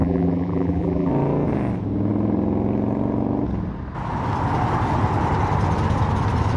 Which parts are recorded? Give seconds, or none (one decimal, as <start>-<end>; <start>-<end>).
1.1-6.6